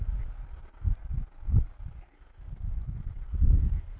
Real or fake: fake